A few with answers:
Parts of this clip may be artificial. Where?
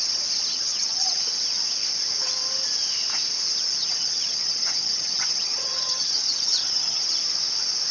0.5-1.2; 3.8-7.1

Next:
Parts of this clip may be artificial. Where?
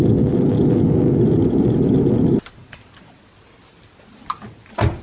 none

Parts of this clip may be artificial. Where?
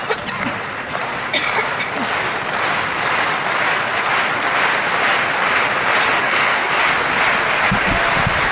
6.2-6.7